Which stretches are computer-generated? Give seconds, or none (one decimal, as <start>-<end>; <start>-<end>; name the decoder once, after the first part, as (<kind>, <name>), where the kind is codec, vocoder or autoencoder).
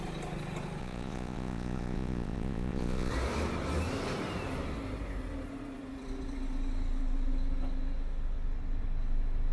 0.8-3.1 (vocoder, Vocos)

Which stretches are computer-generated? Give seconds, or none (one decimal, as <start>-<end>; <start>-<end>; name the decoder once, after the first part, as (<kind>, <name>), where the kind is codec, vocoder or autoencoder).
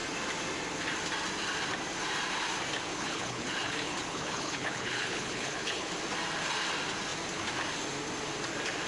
2.9-5.9 (codec, HILCodec)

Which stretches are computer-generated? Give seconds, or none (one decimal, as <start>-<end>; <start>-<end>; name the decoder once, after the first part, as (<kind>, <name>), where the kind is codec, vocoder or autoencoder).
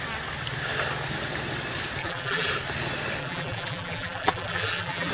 2.0-2.5 (vocoder, BigVGAN v2); 3.2-5.1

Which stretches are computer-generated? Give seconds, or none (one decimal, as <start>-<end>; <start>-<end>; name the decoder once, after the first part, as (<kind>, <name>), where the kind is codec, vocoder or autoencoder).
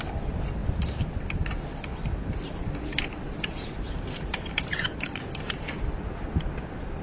1.9-6.1 (vocoder, BigVGAN v2)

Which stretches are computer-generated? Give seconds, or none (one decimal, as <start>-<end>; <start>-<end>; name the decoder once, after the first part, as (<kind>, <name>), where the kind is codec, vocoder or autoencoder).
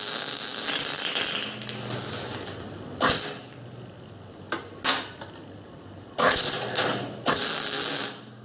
none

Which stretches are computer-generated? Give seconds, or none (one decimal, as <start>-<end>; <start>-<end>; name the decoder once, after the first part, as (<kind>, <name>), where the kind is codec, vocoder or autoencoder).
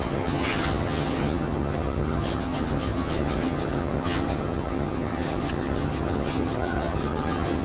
0.0-7.6 (vocoder, HiFi-GAN)